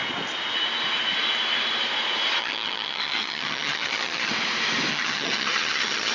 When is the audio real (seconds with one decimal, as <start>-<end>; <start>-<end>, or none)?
0.0-2.4; 4.3-4.9